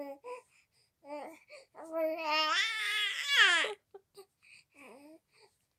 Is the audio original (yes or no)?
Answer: yes